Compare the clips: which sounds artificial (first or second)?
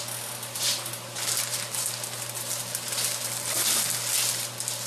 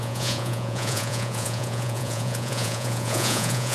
second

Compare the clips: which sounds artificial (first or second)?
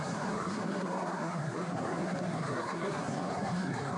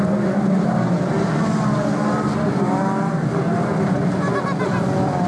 first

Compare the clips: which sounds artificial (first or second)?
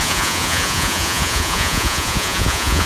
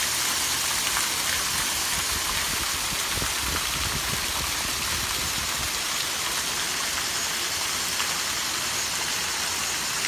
first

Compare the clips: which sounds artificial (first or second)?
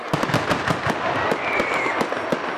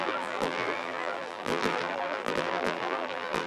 second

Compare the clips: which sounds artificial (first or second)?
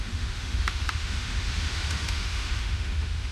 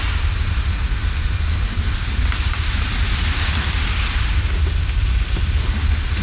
first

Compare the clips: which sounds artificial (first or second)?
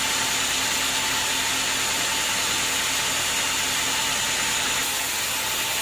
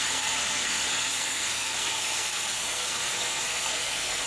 second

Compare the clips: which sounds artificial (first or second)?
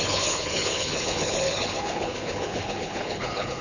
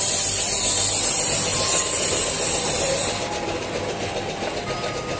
first